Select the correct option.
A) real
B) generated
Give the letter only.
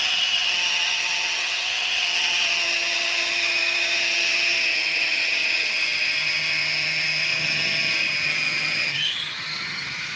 B